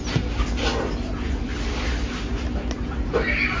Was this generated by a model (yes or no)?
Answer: no